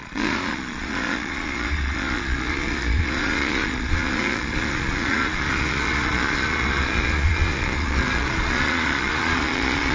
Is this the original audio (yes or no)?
no